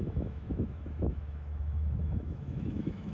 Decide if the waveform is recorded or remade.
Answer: remade